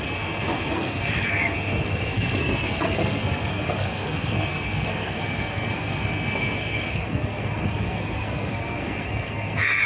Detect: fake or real fake